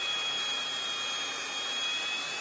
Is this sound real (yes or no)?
yes